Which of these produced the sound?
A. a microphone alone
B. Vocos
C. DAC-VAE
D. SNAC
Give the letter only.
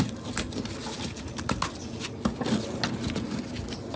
A